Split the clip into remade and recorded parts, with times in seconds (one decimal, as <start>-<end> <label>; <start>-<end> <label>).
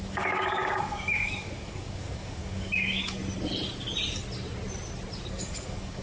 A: 0.0-3.2 remade; 3.2-5.3 recorded; 5.3-6.0 remade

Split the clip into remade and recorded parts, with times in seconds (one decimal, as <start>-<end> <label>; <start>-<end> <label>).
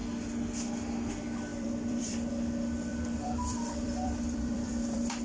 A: 0.0-1.5 recorded; 1.5-2.3 remade; 2.3-2.9 recorded; 2.9-5.2 remade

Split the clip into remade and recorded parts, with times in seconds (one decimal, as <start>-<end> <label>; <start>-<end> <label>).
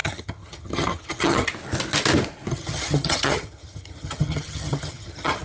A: 0.0-1.5 remade; 1.5-2.5 recorded; 2.5-5.4 remade